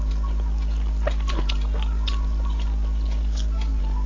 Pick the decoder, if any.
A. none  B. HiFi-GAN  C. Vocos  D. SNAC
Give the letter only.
A